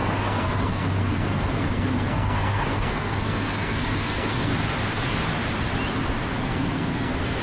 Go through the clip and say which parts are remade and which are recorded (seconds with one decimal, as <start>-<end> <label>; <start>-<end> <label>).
0.0-4.5 remade; 4.5-6.4 recorded; 6.4-7.4 remade